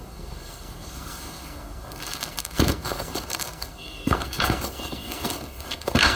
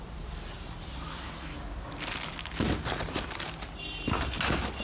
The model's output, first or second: first